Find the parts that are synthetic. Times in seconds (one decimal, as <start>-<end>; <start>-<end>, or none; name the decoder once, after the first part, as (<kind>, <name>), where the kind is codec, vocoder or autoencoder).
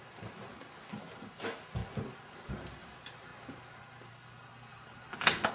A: none